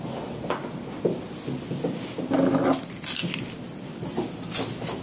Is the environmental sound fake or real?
real